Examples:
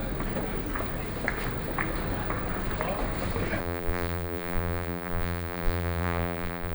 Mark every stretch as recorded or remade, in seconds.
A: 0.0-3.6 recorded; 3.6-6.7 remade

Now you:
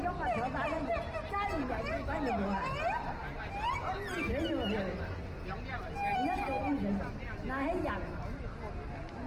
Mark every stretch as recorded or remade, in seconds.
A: 0.0-9.3 recorded

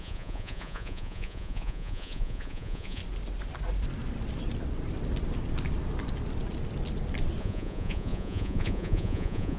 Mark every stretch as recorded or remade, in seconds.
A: 0.0-3.0 remade; 3.0-7.4 recorded; 7.4-9.6 remade